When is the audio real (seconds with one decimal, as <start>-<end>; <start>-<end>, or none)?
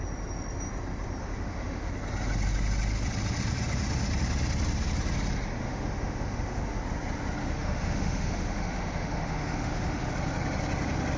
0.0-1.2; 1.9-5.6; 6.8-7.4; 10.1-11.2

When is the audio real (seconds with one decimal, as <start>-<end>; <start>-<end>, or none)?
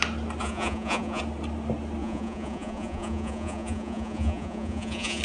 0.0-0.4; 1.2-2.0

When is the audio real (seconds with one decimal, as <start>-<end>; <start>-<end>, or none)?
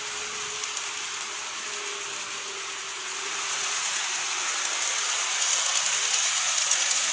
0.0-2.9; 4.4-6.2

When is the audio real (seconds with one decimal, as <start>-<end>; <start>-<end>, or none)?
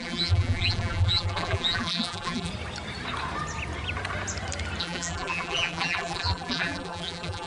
2.5-4.8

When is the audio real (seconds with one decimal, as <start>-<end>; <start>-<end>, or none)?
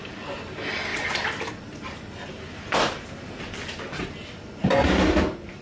0.0-5.6